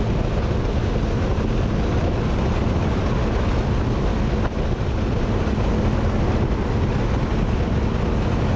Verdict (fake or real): real